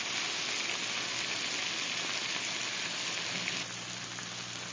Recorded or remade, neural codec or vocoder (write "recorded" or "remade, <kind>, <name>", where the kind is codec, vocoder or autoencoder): recorded